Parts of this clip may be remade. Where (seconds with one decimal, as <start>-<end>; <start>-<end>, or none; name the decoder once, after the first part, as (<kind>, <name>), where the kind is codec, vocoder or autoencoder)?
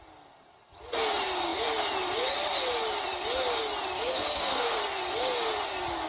4.1-4.8 (codec, SNAC)